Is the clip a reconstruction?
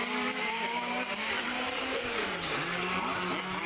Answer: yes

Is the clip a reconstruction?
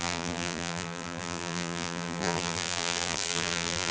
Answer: yes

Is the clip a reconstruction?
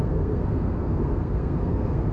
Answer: yes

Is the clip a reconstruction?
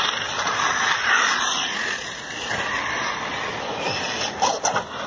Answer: no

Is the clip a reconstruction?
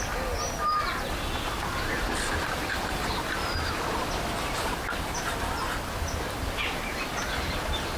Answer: no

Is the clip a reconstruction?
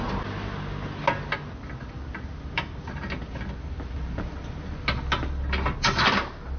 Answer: no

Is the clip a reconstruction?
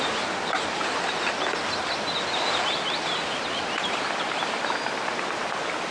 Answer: no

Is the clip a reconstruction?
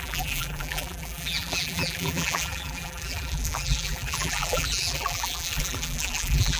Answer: yes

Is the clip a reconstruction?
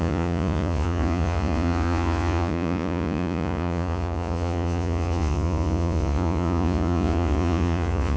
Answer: yes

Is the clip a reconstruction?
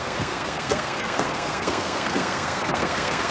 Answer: yes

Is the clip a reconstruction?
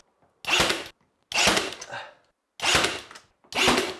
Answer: no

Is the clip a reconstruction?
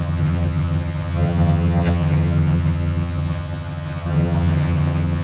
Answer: yes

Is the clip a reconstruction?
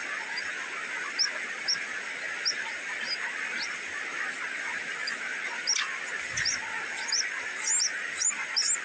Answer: no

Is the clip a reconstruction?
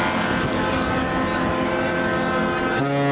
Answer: no